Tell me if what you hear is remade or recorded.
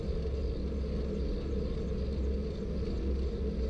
recorded